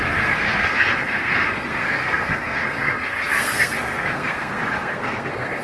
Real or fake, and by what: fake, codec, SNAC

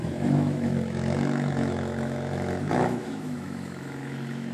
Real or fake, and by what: fake, autoencoder, DAC-VAE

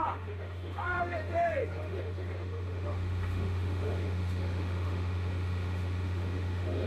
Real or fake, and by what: fake, autoencoder, DAC-VAE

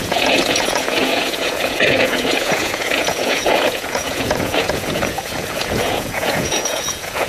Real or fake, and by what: fake, vocoder, Vocos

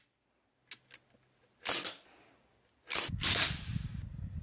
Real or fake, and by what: real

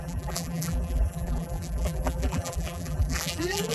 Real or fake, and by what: fake, vocoder, BigVGAN v2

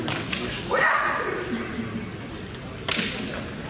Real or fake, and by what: real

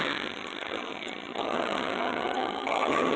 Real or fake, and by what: fake, vocoder, HiFi-GAN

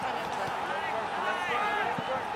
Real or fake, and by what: real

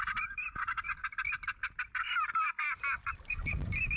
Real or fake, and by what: real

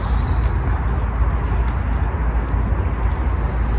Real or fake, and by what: real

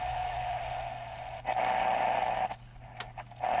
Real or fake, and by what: real